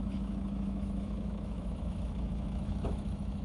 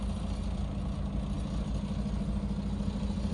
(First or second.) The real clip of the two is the second